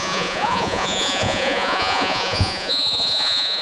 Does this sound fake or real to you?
fake